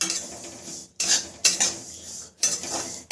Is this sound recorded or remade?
recorded